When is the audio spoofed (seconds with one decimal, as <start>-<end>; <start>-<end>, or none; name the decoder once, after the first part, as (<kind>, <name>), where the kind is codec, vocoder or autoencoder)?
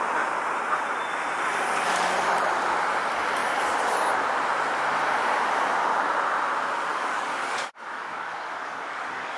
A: 6.9-9.4 (codec, DAC)